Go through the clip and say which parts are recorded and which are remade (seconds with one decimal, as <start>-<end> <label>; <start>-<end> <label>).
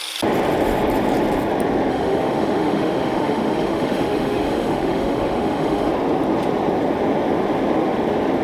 0.0-1.9 recorded; 1.9-5.9 remade; 5.9-8.4 recorded